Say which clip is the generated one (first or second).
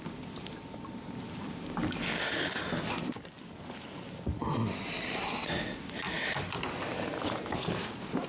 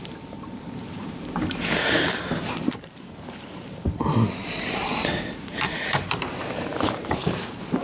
second